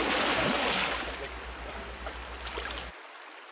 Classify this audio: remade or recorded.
recorded